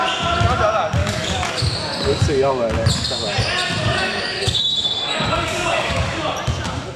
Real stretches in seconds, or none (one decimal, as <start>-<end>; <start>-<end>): 0.0-1.0; 1.7-3.8; 6.1-7.0